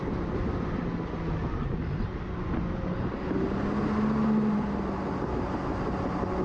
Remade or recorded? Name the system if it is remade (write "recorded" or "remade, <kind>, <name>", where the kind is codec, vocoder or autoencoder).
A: recorded